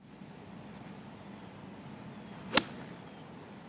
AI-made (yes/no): no